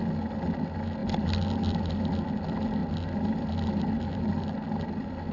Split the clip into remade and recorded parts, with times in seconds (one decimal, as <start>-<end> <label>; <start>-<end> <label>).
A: 0.0-5.3 recorded

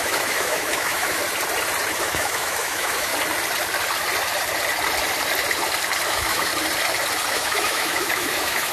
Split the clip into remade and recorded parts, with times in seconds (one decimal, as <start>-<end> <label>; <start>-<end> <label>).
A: 0.0-1.2 remade; 1.2-2.0 recorded; 2.0-3.1 remade; 3.1-6.1 recorded; 6.1-6.5 remade; 6.5-7.3 recorded; 7.3-8.7 remade